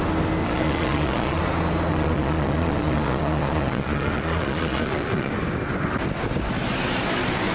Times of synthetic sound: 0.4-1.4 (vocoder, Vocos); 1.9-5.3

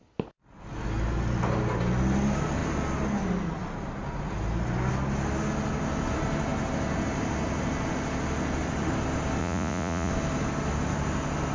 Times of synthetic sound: 9.4-10.1 (vocoder, Vocos)

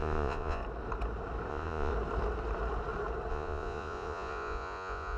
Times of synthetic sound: 0.0-0.6 (vocoder, Vocos); 1.5-1.9; 3.3-5.2

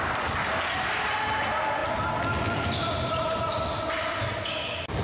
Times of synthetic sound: none